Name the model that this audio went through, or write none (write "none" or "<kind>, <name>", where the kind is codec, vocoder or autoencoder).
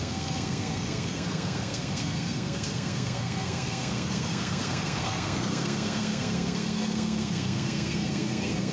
codec, SNAC